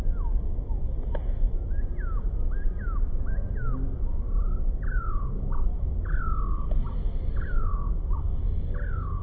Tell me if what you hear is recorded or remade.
recorded